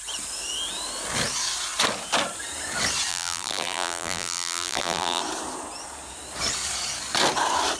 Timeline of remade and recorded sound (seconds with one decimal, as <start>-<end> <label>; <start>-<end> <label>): 0.0-3.1 recorded; 3.1-5.2 remade; 5.2-7.8 recorded